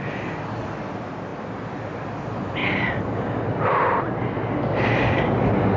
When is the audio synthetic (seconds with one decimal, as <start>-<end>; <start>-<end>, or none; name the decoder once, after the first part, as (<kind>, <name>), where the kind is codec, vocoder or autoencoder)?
2.6-4.0 (vocoder, BigVGAN v2)